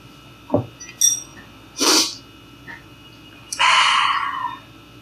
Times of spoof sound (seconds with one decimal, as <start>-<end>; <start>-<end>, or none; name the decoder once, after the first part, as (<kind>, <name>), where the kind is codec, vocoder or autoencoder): none